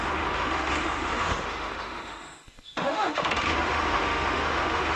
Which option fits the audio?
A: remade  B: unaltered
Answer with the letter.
A